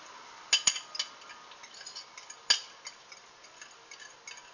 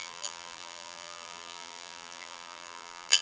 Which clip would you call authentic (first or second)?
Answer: first